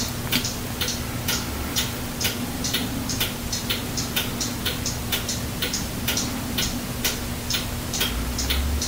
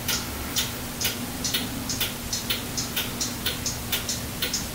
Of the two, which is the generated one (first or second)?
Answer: first